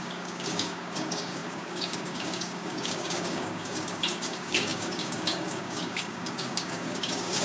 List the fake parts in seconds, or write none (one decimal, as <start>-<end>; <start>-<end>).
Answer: 0.0-7.4